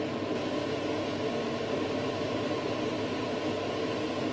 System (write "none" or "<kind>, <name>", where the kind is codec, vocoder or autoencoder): none